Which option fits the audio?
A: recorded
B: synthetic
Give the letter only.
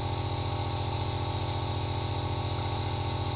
A